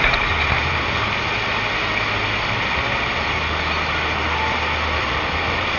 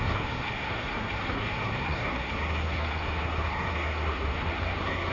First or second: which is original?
first